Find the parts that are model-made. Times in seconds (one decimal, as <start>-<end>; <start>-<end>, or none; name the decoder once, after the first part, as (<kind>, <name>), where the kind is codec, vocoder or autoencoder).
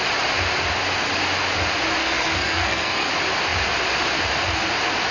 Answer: 2.0-3.1 (codec, SNAC)